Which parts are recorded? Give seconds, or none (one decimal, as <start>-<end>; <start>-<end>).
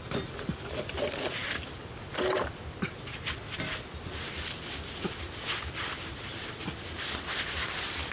0.0-8.1